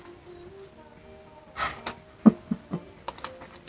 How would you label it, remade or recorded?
recorded